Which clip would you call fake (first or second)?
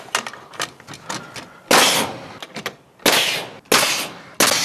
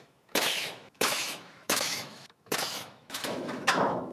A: second